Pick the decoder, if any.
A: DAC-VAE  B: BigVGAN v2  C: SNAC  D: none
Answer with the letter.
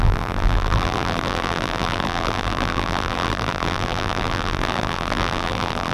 B